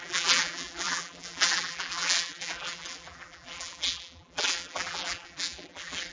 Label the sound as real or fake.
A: fake